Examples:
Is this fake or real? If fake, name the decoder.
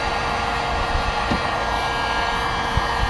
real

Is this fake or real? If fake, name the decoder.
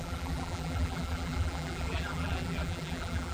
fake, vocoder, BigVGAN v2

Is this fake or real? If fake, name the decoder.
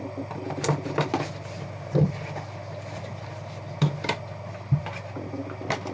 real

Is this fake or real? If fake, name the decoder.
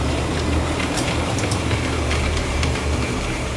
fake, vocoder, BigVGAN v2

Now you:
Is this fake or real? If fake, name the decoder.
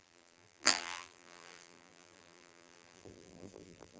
fake, vocoder, BigVGAN v2